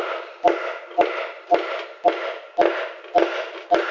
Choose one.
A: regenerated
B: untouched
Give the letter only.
B